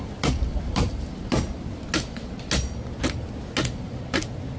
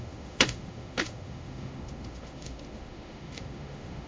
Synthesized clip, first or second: second